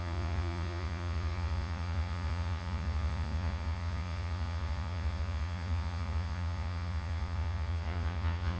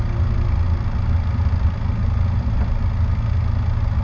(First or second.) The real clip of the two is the second